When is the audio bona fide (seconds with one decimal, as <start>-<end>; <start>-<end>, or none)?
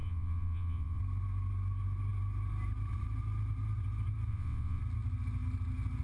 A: 1.0-4.3; 4.8-6.0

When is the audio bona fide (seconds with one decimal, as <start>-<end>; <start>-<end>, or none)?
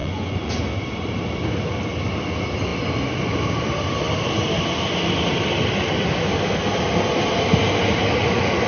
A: 0.5-8.7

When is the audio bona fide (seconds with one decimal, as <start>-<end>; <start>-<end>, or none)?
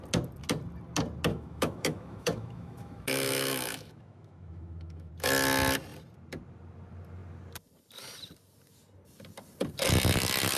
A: 0.0-1.3; 5.1-10.6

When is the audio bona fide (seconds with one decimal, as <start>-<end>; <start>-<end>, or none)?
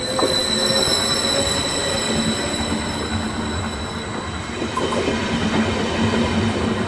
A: 0.0-6.9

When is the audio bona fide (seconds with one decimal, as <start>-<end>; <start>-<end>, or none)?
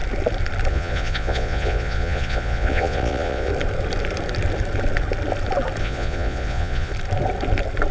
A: 0.0-0.7; 3.5-5.8; 6.9-7.9